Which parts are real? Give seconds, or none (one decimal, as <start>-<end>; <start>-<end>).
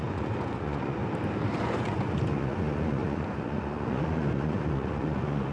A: 1.0-1.6